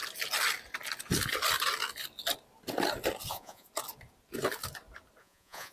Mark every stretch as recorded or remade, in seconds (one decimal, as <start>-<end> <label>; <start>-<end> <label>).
0.0-3.3 recorded; 3.3-3.7 remade; 3.7-5.2 recorded; 5.2-5.7 remade